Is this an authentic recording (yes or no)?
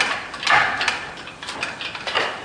yes